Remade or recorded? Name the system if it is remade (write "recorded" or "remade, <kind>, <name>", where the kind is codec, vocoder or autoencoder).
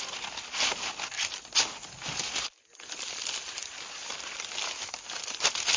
recorded